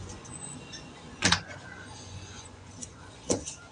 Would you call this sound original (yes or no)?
no